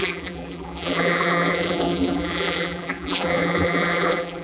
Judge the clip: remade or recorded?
remade